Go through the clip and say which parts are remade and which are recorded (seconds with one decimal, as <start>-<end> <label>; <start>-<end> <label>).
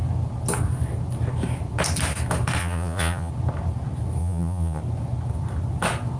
0.0-2.6 recorded; 2.6-3.3 remade; 3.3-4.2 recorded; 4.2-4.8 remade; 4.8-6.2 recorded